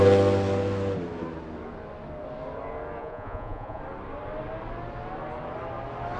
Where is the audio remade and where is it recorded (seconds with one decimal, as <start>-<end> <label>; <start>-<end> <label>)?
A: 0.0-3.0 recorded; 3.0-3.8 remade; 3.8-6.2 recorded